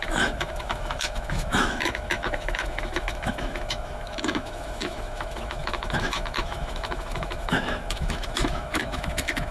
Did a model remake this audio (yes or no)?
yes